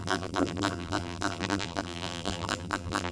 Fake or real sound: fake